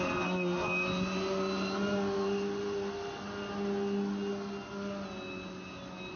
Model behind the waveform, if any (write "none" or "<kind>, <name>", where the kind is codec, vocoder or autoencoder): none